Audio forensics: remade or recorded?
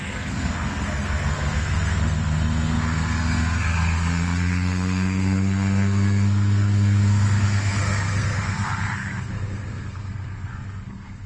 remade